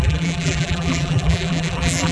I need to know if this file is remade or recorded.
remade